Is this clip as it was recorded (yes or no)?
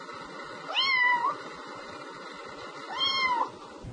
yes